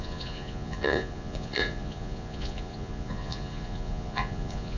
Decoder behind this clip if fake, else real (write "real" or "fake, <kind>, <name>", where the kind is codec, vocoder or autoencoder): fake, vocoder, Vocos